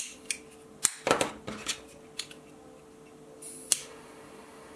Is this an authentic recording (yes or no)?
yes